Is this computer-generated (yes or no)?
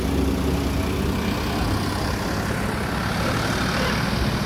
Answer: no